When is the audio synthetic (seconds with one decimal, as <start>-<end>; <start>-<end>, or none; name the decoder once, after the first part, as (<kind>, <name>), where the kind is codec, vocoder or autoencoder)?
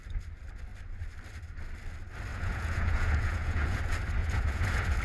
2.3-3.8 (vocoder, Vocos); 4.2-5.0